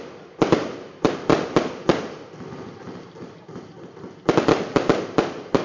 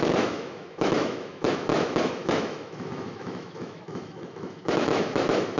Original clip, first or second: first